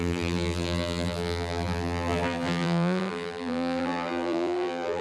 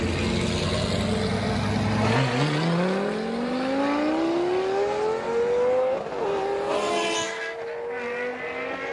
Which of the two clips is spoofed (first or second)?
first